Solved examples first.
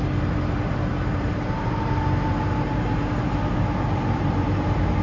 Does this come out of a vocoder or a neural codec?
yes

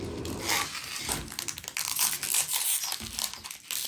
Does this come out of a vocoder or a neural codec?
no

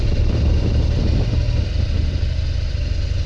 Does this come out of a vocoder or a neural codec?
no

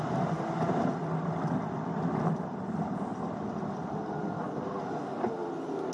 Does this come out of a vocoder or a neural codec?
no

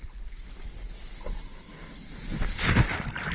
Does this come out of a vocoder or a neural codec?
no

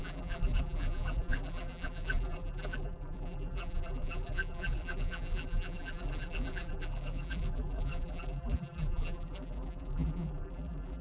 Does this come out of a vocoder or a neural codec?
yes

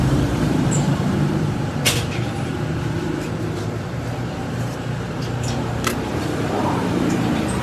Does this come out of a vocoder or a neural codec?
yes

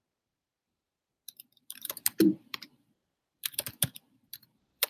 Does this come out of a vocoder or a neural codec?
yes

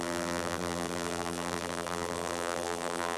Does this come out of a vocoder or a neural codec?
yes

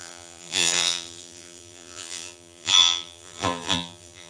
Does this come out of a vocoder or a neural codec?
yes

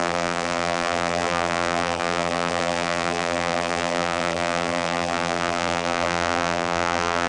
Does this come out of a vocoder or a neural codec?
yes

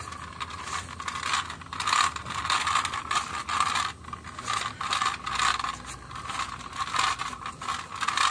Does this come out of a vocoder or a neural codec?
no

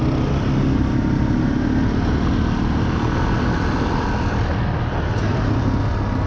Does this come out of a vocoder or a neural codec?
no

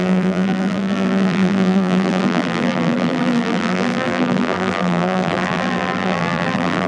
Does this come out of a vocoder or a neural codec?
yes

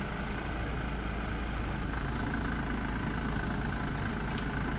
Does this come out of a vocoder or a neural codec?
no